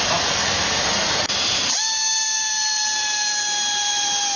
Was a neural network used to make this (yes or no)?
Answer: no